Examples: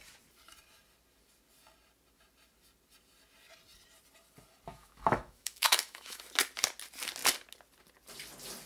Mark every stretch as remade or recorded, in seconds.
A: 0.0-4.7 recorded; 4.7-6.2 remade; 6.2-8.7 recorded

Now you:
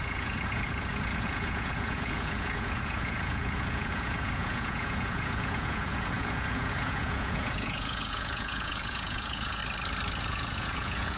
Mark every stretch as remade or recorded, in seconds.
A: 0.0-9.6 remade; 9.6-10.2 recorded; 10.2-11.2 remade